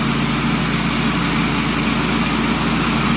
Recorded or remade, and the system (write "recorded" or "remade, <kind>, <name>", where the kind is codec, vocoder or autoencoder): recorded